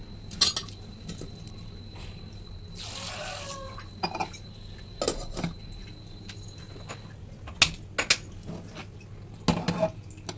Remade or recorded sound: recorded